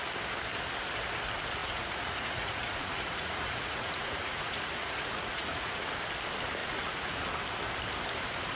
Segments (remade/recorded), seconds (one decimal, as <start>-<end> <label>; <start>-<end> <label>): 0.0-1.6 recorded; 1.6-5.8 remade; 5.8-6.6 recorded; 6.6-7.2 remade; 7.2-8.6 recorded